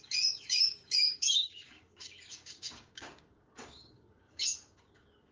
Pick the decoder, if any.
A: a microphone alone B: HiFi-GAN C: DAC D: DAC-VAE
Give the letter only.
C